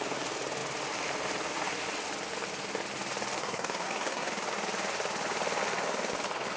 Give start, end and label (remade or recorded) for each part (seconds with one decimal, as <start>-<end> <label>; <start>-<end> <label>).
0.0-3.4 recorded; 3.4-4.3 remade; 4.3-6.6 recorded